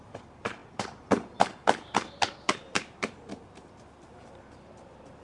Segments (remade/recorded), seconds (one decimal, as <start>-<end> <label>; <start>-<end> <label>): 0.0-5.2 remade